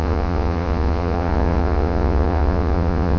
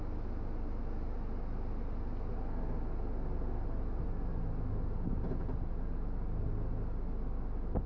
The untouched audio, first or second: second